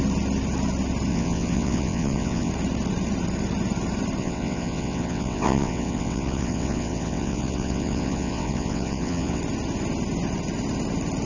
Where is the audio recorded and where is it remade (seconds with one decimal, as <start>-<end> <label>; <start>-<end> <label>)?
0.0-1.1 recorded; 1.1-2.5 remade; 2.5-4.2 recorded; 4.2-9.4 remade; 9.4-11.2 recorded